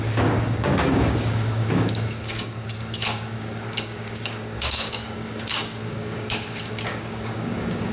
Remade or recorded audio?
remade